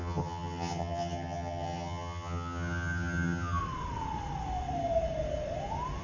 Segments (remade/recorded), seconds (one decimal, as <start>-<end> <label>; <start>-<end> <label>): 0.0-3.6 remade; 3.6-6.0 recorded